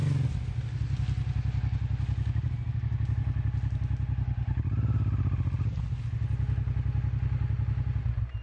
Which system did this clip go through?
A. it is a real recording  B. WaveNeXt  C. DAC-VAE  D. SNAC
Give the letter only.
A